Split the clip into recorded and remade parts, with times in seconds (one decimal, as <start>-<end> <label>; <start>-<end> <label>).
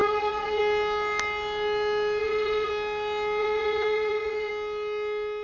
0.0-0.6 remade; 0.6-2.2 recorded; 2.2-2.7 remade; 2.7-3.4 recorded; 3.4-4.5 remade; 4.5-5.4 recorded